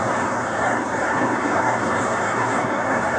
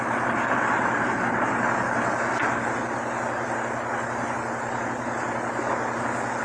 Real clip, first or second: second